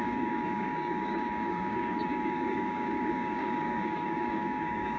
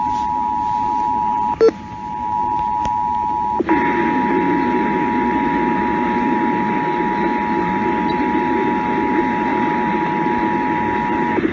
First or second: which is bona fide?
second